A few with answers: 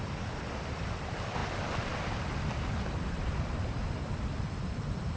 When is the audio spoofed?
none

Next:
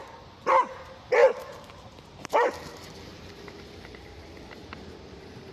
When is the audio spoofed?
1.2-2.5 (vocoder, BigVGAN v2); 3.1-4.3

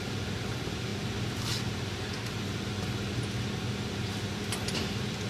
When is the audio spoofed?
0.0-0.9 (vocoder, BigVGAN v2); 4.1-5.3

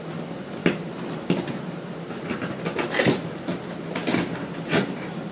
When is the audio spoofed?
0.0-0.6 (vocoder, BigVGAN v2); 2.6-5.3

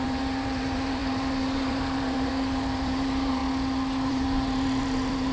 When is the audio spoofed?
0.0-3.4 (vocoder, BigVGAN v2); 4.1-5.3

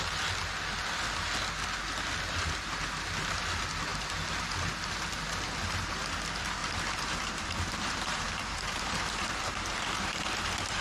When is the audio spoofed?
6.6-10.8 (vocoder, BigVGAN v2)